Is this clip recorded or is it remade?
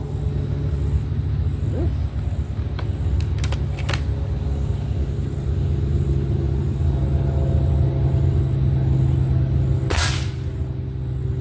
recorded